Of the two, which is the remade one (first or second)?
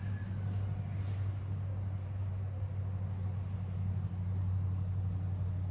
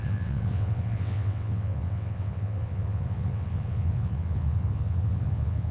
second